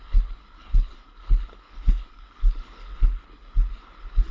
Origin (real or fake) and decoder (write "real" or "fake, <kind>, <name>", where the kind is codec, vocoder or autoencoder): fake, codec, HILCodec